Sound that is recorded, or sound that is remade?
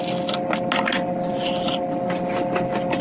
recorded